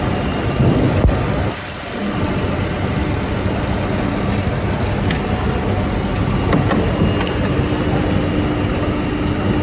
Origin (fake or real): real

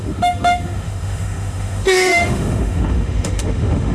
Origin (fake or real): fake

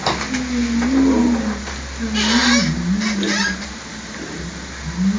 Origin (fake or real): real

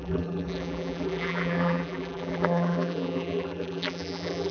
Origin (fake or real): fake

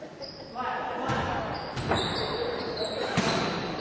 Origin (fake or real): real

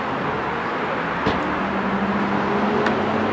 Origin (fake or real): real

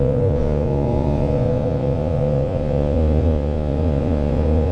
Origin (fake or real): fake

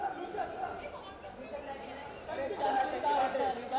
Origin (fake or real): fake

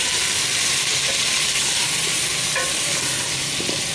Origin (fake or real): real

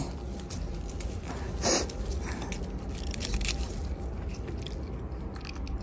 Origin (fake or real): real